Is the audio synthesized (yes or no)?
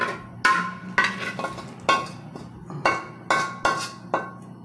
no